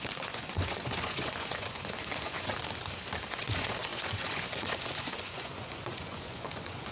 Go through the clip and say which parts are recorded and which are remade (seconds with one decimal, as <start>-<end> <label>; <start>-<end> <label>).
0.0-2.5 remade; 2.5-3.3 recorded; 3.3-6.9 remade